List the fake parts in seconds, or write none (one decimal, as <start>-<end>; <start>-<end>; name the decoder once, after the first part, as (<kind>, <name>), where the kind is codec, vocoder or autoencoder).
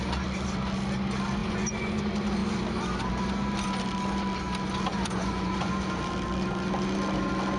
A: 1.4-2.0 (vocoder, Vocos); 4.9-5.7